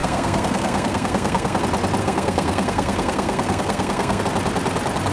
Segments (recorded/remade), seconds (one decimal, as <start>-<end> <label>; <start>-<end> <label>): 0.0-1.6 remade; 1.6-2.0 recorded; 2.0-4.2 remade; 4.2-5.1 recorded